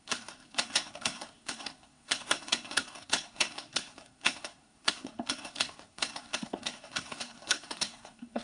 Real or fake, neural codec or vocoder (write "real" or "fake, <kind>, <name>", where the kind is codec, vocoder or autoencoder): fake, codec, SNAC